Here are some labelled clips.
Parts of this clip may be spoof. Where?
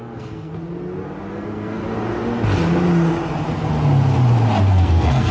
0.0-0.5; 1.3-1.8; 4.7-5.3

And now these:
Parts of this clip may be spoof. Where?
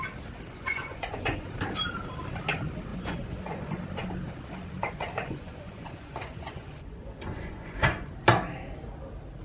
0.5-1.5; 2.9-3.8; 4.8-8.1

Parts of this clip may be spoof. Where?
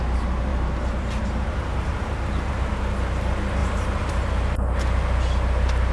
0.5-2.7; 3.6-4.1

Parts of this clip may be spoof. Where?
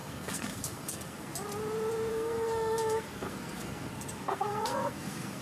0.0-1.3; 2.1-5.4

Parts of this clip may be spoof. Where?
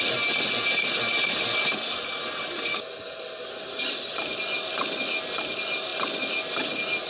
none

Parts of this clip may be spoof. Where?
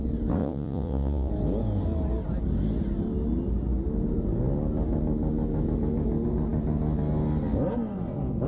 0.4-1.3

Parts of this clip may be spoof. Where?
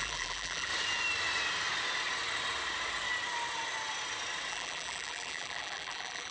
0.0-0.7; 4.5-6.3